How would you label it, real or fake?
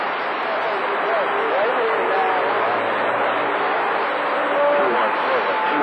real